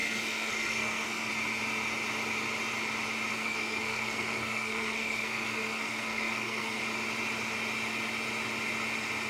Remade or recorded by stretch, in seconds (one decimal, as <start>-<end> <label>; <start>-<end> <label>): 0.0-1.3 remade; 1.3-3.3 recorded; 3.3-6.8 remade; 6.8-9.3 recorded